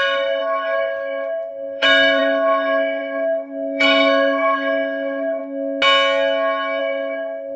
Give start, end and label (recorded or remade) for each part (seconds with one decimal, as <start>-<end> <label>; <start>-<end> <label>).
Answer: 0.0-5.4 remade; 5.4-6.8 recorded; 6.8-7.6 remade